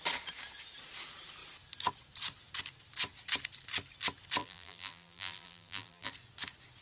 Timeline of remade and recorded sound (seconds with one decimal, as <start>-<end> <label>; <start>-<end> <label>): 0.0-4.4 recorded; 4.4-6.1 remade; 6.1-6.8 recorded